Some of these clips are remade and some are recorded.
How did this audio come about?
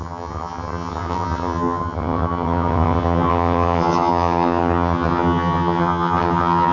remade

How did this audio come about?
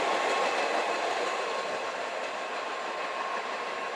recorded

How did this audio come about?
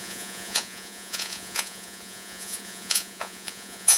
remade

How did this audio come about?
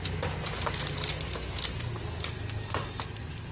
recorded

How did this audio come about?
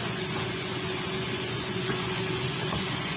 remade